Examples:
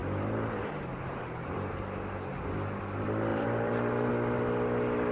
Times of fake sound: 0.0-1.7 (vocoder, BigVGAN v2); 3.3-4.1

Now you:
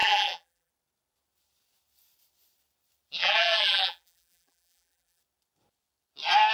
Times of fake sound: 0.0-0.7 (vocoder, BigVGAN v2); 3.2-5.2

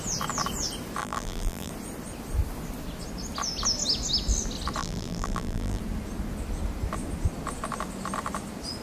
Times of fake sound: 1.0-1.7 (vocoder, BigVGAN v2); 4.8-5.8

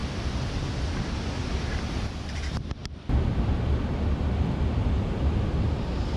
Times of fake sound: none